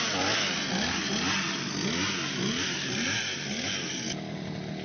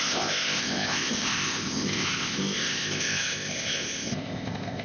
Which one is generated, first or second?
second